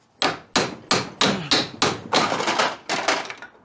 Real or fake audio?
real